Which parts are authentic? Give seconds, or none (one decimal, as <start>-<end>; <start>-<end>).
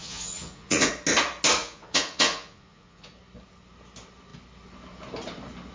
0.9-1.6; 3.1-5.7